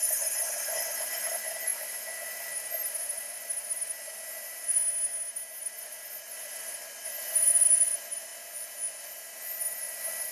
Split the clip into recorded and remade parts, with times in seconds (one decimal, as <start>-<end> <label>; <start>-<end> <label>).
0.0-4.8 remade; 4.8-5.6 recorded; 5.6-8.3 remade; 8.3-9.0 recorded; 9.0-10.3 remade